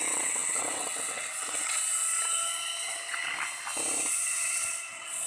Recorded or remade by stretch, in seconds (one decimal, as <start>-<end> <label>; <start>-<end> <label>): 0.0-1.9 remade; 1.9-4.1 recorded; 4.1-5.3 remade